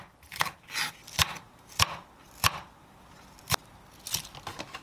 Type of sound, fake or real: real